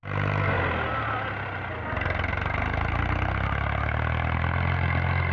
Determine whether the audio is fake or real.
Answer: real